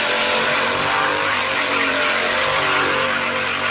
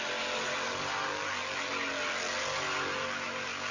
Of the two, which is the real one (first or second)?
second